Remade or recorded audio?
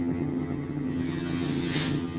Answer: remade